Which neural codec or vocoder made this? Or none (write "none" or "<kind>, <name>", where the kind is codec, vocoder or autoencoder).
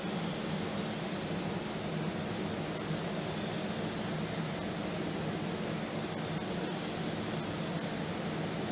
none